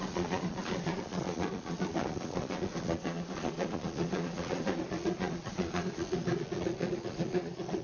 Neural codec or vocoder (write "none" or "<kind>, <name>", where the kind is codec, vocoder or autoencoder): vocoder, Vocos